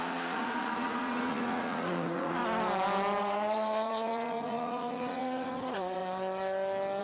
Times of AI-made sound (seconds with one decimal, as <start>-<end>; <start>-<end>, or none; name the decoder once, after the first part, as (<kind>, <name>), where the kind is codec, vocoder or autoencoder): 0.0-2.4 (vocoder, Vocos); 3.2-6.0